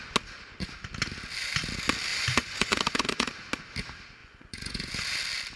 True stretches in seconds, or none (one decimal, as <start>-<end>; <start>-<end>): 0.0-2.1; 3.3-4.2; 4.9-5.6